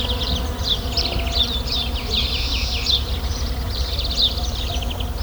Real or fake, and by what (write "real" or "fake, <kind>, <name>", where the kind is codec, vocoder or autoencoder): fake, vocoder, BigVGAN v2